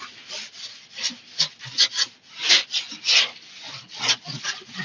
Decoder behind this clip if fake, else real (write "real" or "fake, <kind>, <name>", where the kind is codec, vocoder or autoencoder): real